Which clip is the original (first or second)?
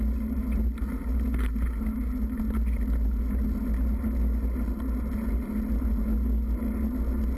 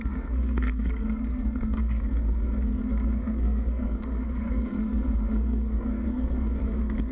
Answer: first